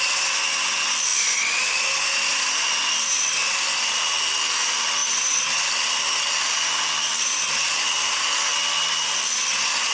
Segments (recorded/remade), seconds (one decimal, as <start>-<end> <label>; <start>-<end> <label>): 0.0-9.9 recorded

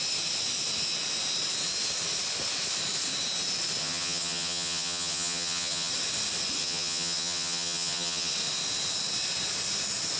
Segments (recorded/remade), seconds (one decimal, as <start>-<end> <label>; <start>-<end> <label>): 0.0-3.8 recorded; 3.8-5.9 remade; 5.9-6.6 recorded; 6.6-8.3 remade; 8.3-10.2 recorded

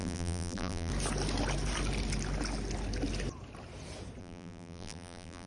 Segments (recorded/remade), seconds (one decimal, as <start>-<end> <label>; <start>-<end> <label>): 0.0-0.9 remade; 0.9-4.2 recorded; 4.2-5.5 remade